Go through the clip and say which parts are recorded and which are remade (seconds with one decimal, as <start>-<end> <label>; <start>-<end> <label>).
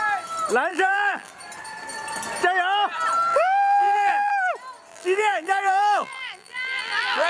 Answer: 0.0-0.7 recorded; 0.7-1.3 remade; 1.3-3.3 recorded; 3.3-4.3 remade; 4.3-4.9 recorded; 4.9-7.3 remade